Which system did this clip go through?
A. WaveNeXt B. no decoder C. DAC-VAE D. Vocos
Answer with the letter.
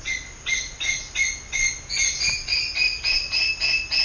B